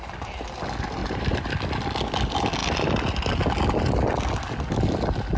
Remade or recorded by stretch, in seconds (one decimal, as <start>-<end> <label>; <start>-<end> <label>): 0.0-1.0 recorded; 1.0-1.5 remade; 1.5-5.4 recorded